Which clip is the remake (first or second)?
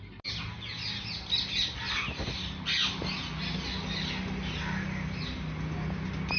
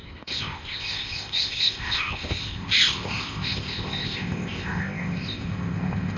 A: second